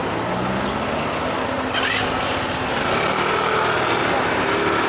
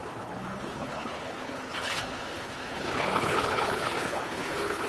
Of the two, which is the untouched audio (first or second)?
first